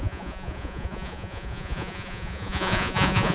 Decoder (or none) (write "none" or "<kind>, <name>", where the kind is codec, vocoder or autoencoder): vocoder, Vocos